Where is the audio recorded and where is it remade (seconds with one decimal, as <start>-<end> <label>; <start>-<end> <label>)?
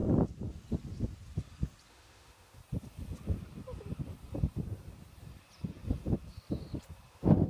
0.0-1.9 recorded; 1.9-2.6 remade; 2.6-7.1 recorded; 7.1-7.5 remade